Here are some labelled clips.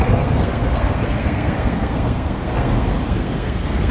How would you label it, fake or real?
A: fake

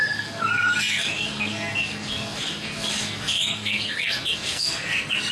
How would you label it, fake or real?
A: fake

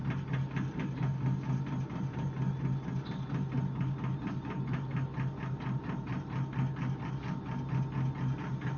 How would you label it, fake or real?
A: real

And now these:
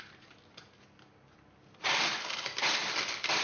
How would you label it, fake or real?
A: real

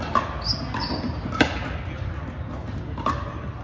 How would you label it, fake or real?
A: real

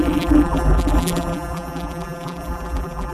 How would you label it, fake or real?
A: fake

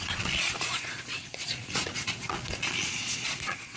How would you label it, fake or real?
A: fake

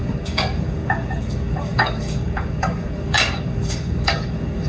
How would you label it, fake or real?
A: fake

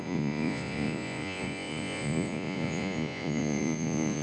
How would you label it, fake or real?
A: fake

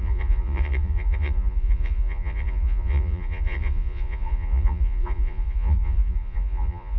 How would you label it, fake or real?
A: fake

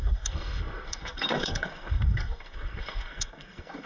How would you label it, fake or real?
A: fake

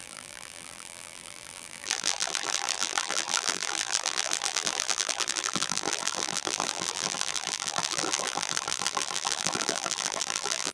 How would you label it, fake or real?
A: fake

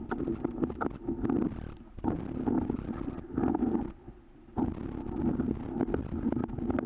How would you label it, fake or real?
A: real